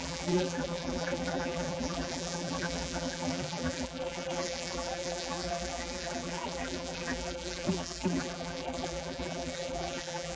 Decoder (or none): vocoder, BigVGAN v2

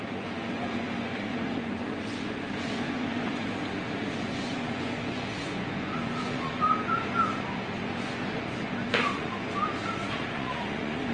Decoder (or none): vocoder, Vocos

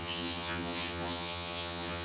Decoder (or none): vocoder, HiFi-GAN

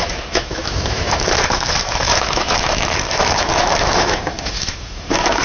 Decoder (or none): autoencoder, DAC-VAE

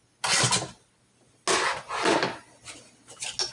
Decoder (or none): none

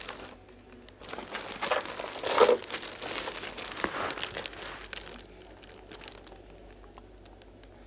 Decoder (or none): none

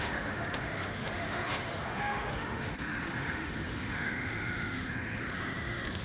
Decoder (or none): autoencoder, DAC-VAE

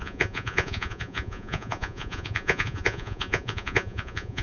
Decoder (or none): vocoder, Vocos